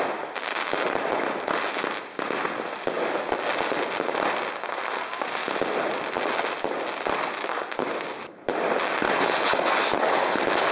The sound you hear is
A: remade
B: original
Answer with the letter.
B